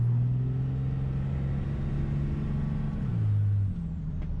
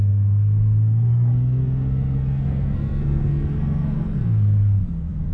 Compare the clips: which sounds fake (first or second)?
second